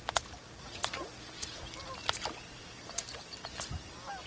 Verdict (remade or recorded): recorded